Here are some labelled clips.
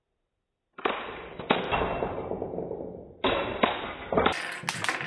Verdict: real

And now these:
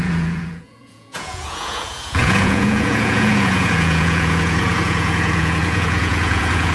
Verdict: fake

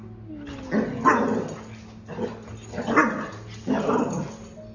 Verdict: real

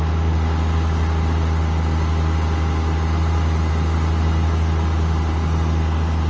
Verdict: real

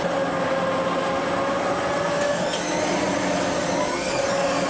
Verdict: real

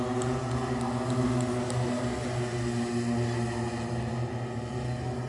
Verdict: real